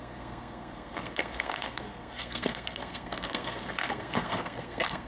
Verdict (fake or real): fake